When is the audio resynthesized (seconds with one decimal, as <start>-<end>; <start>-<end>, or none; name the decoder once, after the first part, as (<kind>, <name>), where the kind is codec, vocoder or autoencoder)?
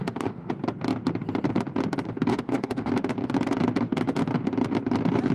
0.0-0.5 (autoencoder, DAC-VAE); 2.3-2.9